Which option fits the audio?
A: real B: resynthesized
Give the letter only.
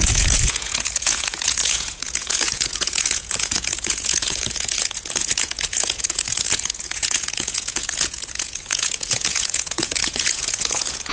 B